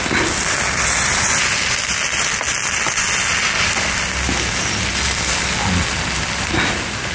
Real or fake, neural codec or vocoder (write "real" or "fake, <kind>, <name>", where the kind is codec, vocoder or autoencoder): real